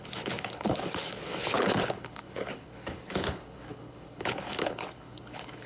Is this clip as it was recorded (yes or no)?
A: no